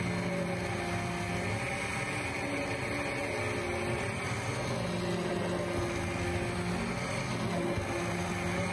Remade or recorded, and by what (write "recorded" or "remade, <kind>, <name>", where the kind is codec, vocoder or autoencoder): recorded